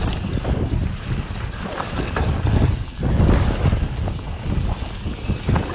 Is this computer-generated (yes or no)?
no